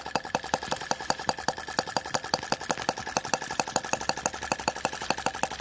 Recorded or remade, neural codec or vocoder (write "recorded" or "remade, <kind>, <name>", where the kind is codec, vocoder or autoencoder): recorded